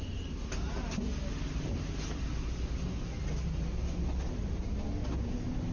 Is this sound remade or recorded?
recorded